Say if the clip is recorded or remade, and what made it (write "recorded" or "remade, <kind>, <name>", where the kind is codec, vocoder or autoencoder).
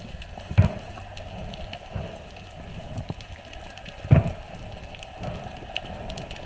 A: recorded